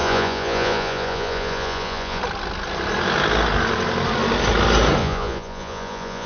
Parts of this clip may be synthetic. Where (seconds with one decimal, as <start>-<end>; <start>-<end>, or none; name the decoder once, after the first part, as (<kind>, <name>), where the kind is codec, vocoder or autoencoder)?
0.0-2.2 (vocoder, Vocos); 5.0-6.3